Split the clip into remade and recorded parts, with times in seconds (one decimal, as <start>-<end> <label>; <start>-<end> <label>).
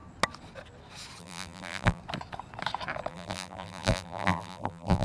0.0-1.2 recorded; 1.2-2.0 remade; 2.0-3.1 recorded; 3.1-5.0 remade